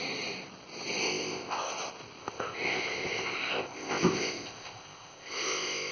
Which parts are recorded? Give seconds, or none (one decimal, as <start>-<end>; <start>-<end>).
0.0-1.0; 1.7-2.2